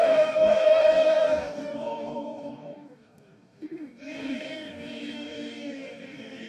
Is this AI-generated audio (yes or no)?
yes